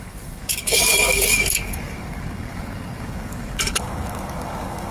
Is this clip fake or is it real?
fake